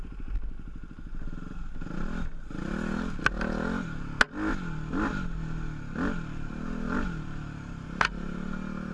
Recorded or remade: recorded